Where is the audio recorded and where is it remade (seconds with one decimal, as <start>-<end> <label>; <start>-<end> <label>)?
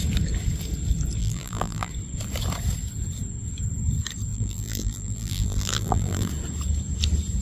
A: 0.0-1.2 recorded; 1.2-1.9 remade; 1.9-4.3 recorded; 4.3-6.3 remade; 6.3-7.4 recorded